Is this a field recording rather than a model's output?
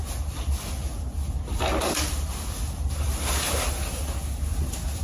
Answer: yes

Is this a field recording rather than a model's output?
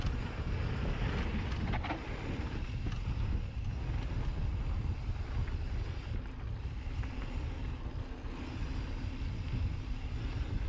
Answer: yes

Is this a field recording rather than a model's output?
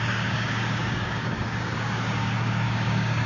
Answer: no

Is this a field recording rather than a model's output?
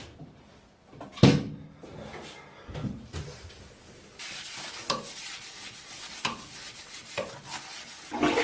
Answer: yes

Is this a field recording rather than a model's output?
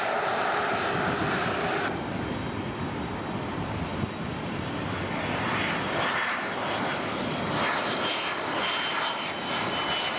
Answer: yes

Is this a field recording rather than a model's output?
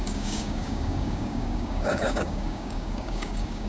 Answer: no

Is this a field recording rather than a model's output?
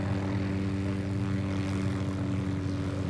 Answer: yes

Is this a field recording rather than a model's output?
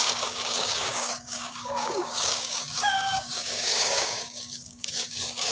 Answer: no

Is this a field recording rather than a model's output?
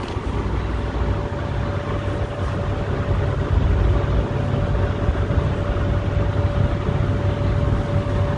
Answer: yes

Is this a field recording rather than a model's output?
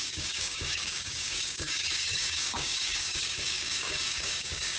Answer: no